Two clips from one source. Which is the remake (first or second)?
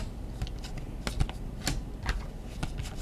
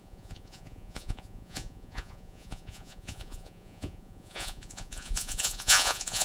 second